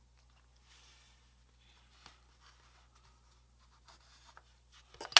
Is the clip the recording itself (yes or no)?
yes